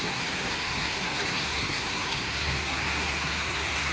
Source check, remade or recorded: remade